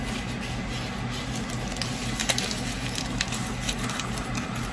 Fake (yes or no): no